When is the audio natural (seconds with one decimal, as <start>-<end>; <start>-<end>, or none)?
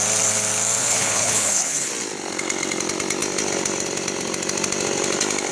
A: 0.0-0.8; 1.9-5.5